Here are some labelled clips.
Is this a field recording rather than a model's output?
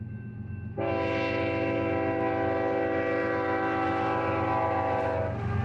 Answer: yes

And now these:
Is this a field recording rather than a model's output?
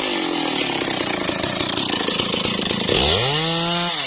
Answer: yes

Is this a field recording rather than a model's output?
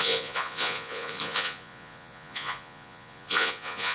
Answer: no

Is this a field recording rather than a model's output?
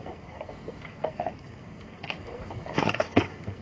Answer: no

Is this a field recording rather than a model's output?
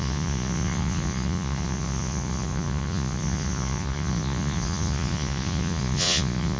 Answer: no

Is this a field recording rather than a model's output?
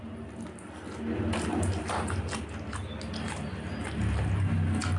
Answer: yes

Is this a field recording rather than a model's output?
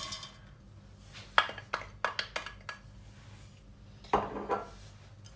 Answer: yes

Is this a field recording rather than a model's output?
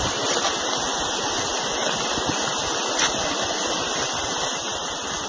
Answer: yes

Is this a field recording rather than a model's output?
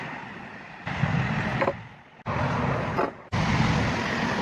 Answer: yes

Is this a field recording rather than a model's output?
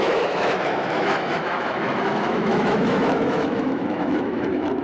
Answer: no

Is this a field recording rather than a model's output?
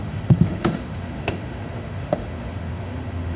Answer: no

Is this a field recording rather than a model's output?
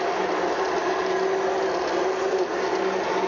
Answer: yes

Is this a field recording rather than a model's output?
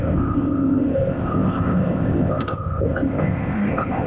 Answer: no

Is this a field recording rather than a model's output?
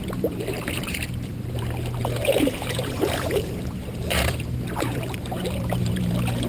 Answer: no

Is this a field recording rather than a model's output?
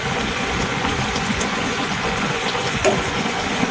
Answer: no